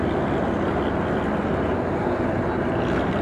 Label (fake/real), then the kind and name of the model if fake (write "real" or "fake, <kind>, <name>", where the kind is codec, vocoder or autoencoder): real